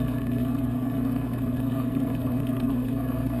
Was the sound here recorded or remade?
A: remade